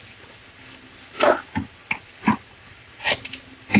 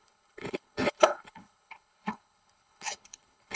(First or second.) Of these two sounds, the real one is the first